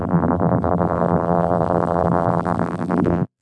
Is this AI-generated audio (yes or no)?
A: yes